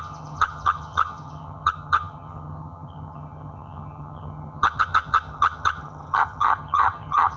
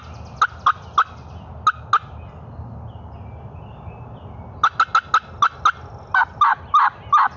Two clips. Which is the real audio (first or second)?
second